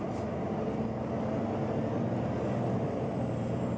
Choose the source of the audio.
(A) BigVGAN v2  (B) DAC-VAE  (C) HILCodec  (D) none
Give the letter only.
D